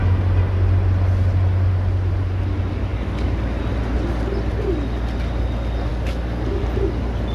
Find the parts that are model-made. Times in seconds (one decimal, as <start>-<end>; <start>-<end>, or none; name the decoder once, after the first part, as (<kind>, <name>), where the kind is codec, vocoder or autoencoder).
2.9-3.6 (codec, DAC); 5.9-6.6